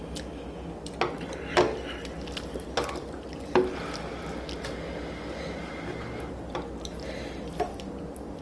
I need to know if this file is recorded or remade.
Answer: recorded